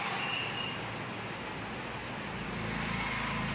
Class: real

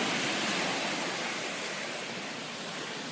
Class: real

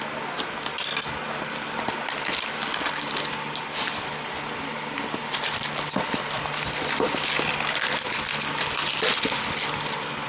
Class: real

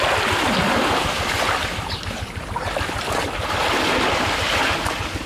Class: real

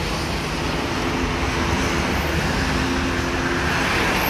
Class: real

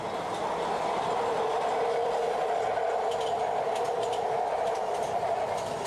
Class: real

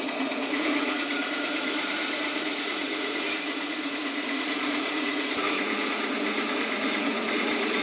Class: fake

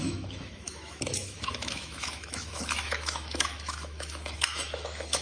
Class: fake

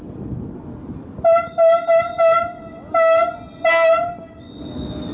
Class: real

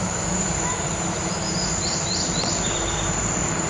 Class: fake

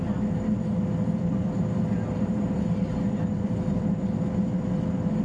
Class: fake